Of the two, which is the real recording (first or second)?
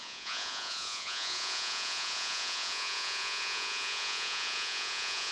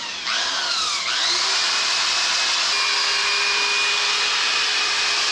second